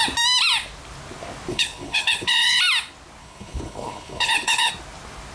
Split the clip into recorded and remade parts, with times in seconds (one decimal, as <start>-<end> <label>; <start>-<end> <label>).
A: 0.0-1.5 recorded; 1.5-2.6 remade; 2.6-3.2 recorded; 3.2-4.7 remade; 4.7-5.3 recorded

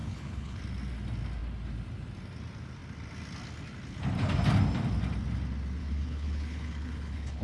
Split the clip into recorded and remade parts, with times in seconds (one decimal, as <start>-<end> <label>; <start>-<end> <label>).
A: 0.0-0.6 remade; 0.6-5.8 recorded; 5.8-7.4 remade

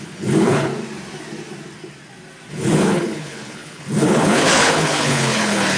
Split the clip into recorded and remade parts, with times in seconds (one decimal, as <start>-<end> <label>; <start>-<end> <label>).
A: 0.0-0.7 remade; 0.7-2.5 recorded; 2.5-5.8 remade